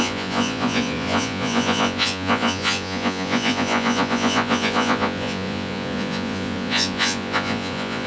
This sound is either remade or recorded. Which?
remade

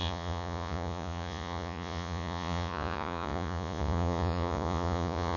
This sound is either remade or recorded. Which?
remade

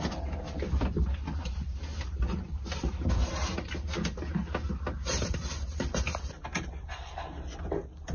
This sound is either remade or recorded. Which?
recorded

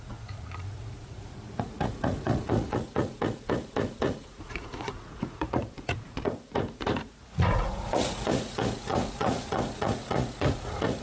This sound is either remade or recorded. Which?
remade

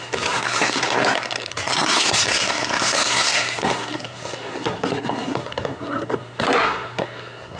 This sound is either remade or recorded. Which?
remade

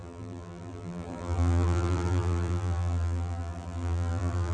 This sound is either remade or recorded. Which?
remade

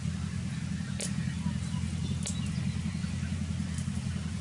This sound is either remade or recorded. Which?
recorded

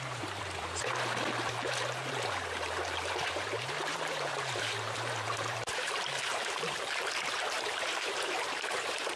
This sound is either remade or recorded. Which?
remade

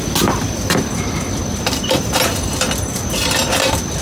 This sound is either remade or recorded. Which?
recorded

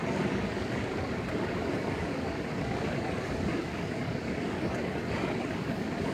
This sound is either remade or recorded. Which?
remade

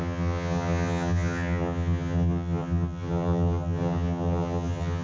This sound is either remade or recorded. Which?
remade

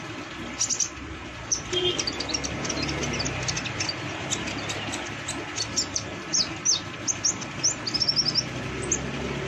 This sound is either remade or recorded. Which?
recorded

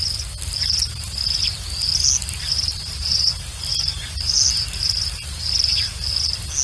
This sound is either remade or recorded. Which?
recorded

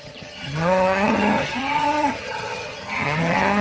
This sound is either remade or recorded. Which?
remade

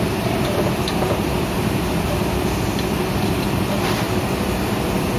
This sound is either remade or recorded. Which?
remade